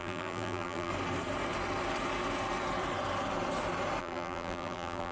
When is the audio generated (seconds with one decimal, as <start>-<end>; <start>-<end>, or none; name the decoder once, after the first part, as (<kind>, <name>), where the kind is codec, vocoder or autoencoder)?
0.0-0.9 (vocoder, BigVGAN v2); 4.0-5.1